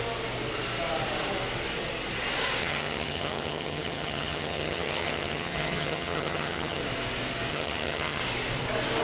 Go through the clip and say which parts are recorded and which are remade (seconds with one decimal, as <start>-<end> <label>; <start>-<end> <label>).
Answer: 0.0-2.6 recorded; 2.6-6.8 remade; 6.8-7.5 recorded; 7.5-8.2 remade; 8.2-9.0 recorded

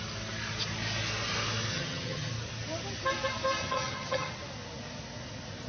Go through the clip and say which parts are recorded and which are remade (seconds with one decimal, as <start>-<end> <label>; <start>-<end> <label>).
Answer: 0.0-1.7 recorded; 1.7-2.3 remade; 2.3-3.6 recorded; 3.6-4.3 remade; 4.3-5.7 recorded

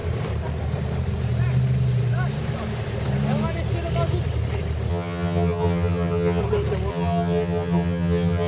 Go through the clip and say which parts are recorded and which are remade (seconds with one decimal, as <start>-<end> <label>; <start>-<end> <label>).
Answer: 0.0-4.9 recorded; 4.9-6.4 remade; 6.4-6.9 recorded; 6.9-8.5 remade

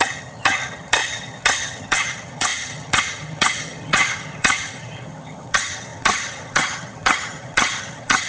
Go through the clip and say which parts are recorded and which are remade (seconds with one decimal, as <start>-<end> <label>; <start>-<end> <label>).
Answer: 0.0-8.3 remade